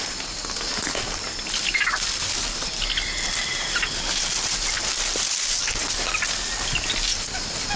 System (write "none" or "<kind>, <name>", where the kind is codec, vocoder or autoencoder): none